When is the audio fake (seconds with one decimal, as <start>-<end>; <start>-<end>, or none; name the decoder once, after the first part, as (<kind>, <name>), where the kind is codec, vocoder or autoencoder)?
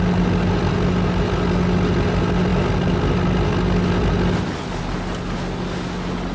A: none